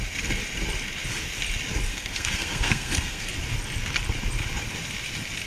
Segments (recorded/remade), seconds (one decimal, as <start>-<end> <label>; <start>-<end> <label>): 0.0-1.9 recorded; 1.9-3.3 remade; 3.3-5.5 recorded